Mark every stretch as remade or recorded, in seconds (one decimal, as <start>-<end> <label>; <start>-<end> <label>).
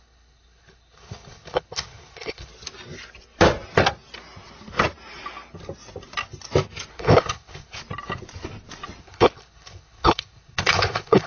0.0-2.5 remade; 2.5-6.9 recorded; 6.9-7.8 remade; 7.8-9.0 recorded; 9.0-11.3 remade